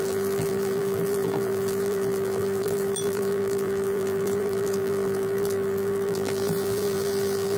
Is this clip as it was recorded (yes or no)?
no